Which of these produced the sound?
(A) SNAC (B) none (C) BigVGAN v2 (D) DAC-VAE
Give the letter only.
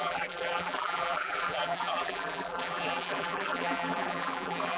C